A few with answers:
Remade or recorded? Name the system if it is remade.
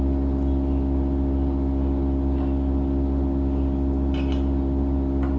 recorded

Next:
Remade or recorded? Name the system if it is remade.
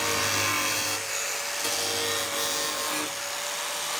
recorded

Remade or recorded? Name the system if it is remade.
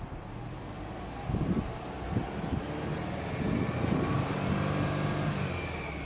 recorded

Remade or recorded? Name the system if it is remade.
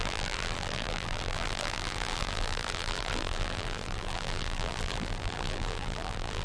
remade, vocoder, BigVGAN v2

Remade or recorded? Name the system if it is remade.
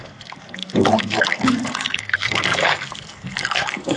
remade, codec, SNAC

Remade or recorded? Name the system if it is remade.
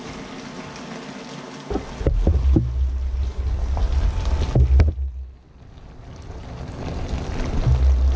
recorded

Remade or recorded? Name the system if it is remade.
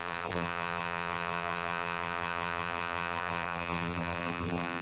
remade, vocoder, BigVGAN v2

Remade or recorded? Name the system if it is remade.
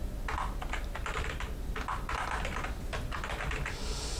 recorded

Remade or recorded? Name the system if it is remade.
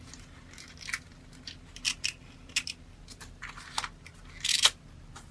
recorded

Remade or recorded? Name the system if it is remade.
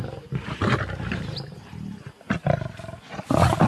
recorded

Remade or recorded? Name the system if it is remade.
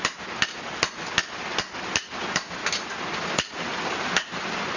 recorded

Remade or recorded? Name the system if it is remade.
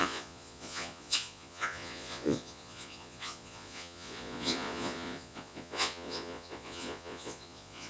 remade, vocoder, Vocos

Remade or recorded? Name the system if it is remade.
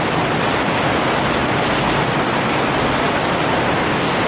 recorded